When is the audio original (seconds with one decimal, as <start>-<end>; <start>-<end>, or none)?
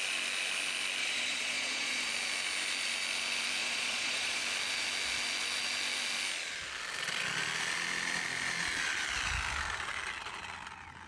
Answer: 0.0-1.0; 2.1-3.6; 4.4-11.1